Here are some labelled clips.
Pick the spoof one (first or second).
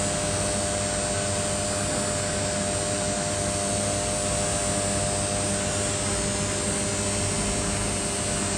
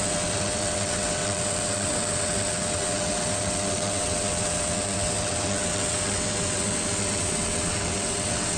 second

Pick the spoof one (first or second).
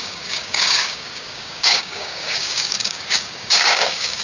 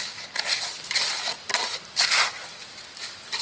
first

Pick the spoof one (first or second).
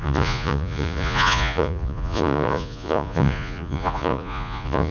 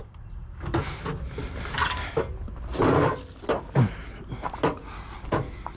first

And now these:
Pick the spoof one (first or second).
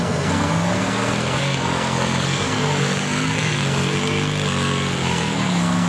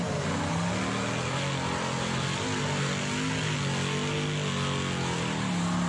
first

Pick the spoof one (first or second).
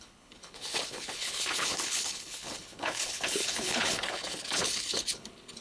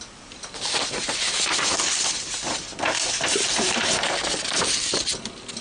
first